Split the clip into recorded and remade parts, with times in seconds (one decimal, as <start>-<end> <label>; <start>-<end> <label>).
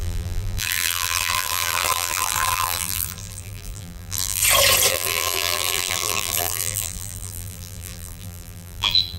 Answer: 0.0-4.4 remade; 4.4-4.9 recorded; 4.9-9.2 remade